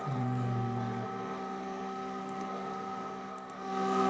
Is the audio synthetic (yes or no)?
yes